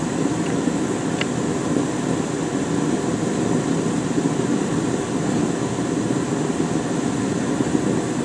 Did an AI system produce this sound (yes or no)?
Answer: no